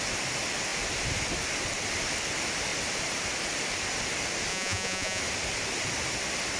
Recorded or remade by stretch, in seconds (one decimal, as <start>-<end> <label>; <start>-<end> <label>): 0.0-4.5 recorded; 4.5-5.2 remade; 5.2-6.6 recorded